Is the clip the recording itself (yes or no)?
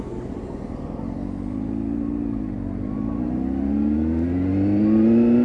yes